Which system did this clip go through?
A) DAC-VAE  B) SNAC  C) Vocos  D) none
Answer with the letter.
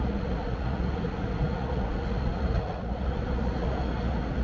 C